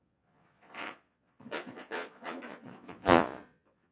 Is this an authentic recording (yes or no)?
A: no